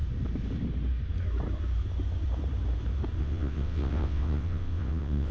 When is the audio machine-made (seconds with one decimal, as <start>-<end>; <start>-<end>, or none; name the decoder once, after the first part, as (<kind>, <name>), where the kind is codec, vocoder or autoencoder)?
3.2-5.3 (vocoder, WaveNeXt)